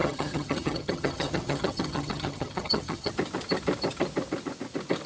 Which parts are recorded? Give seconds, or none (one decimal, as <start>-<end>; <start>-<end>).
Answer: 3.1-5.1